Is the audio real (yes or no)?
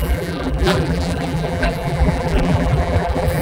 no